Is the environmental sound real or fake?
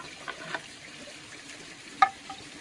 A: real